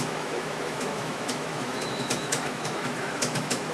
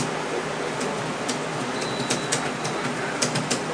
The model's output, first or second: first